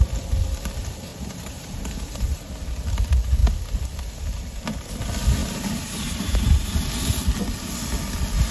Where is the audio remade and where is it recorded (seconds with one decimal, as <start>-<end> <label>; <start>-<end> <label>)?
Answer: 0.0-1.1 recorded; 1.1-2.5 remade; 2.5-5.4 recorded; 5.4-6.9 remade; 6.9-8.5 recorded

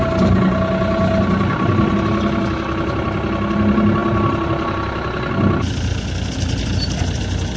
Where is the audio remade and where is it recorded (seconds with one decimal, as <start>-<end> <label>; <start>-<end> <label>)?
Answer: 0.0-7.6 recorded

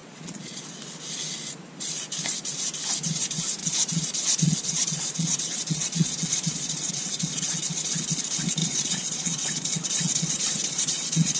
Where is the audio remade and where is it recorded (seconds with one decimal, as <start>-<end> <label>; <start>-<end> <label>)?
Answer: 0.0-0.6 remade; 0.6-3.6 recorded; 3.6-7.6 remade; 7.6-8.6 recorded; 8.6-11.4 remade

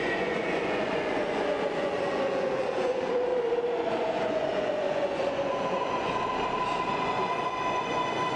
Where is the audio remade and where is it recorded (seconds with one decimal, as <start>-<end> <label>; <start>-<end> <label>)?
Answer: 0.0-3.3 remade; 3.3-3.9 recorded; 3.9-6.1 remade; 6.1-6.9 recorded; 6.9-8.4 remade

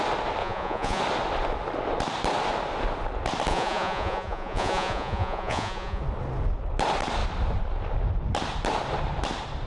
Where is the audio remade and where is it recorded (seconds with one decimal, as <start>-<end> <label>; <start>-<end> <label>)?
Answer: 0.0-0.4 recorded; 0.4-1.0 remade; 1.0-3.5 recorded; 3.5-6.0 remade; 6.0-9.7 recorded

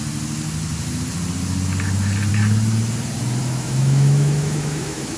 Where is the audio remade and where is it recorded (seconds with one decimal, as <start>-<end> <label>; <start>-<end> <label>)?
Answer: 0.0-3.4 recorded; 3.4-5.2 remade